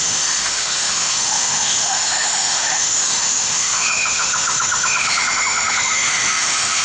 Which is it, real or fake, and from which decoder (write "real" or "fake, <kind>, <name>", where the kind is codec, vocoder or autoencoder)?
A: fake, autoencoder, DAC-VAE